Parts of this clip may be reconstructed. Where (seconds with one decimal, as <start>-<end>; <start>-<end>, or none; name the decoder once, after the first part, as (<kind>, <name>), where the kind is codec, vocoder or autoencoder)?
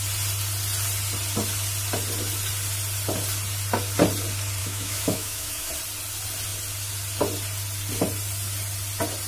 4.6-5.7 (autoencoder, DAC-VAE)